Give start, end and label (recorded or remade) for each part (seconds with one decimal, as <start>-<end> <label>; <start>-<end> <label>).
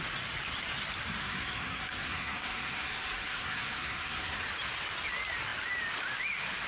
0.0-1.2 recorded; 1.2-4.4 remade; 4.4-6.7 recorded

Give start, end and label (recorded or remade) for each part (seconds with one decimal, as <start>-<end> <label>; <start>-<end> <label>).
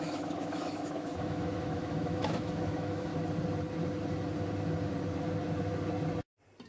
0.0-3.1 remade; 3.1-6.7 recorded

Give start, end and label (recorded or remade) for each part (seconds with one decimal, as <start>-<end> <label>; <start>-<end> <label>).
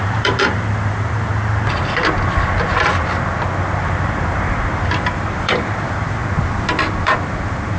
0.0-1.3 remade; 1.3-3.8 recorded; 3.8-6.2 remade; 6.2-7.0 recorded; 7.0-7.8 remade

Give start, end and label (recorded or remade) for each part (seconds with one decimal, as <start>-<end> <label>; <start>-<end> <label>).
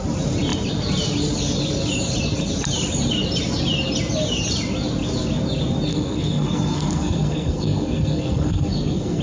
0.0-5.9 recorded; 5.9-9.2 remade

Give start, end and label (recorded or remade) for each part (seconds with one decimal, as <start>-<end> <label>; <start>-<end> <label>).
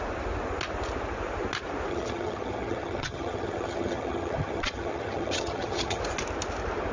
0.0-1.9 recorded; 1.9-6.0 remade; 6.0-6.9 recorded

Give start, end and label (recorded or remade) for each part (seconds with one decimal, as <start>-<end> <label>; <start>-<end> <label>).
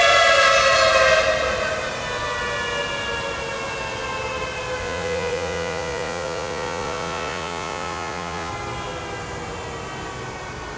0.0-4.8 recorded; 4.8-8.5 remade; 8.5-10.8 recorded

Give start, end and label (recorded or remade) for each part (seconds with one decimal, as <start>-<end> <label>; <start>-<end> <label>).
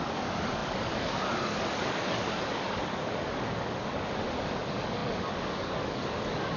0.0-6.6 remade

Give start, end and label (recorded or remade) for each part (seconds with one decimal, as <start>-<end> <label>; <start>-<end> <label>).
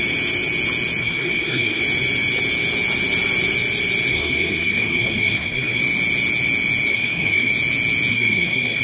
0.0-1.0 recorded; 1.0-1.8 remade; 1.8-4.1 recorded; 4.1-5.8 remade; 5.8-6.9 recorded; 6.9-7.5 remade; 7.5-8.1 recorded; 8.1-8.8 remade